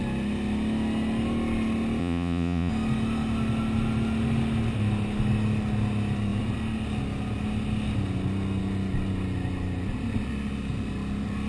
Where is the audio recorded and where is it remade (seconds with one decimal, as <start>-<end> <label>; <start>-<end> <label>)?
0.0-2.0 recorded; 2.0-2.7 remade; 2.7-11.5 recorded